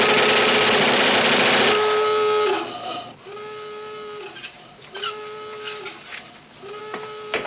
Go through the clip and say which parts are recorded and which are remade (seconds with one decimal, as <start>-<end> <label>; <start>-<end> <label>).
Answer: 0.0-7.5 recorded